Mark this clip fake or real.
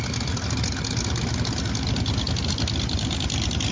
real